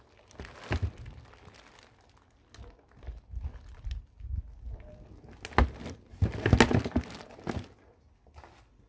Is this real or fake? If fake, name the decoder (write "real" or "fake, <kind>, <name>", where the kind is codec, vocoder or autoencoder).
real